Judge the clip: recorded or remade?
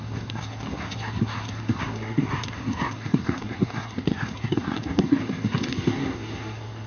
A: remade